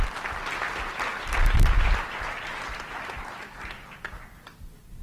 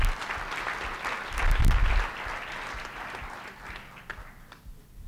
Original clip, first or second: second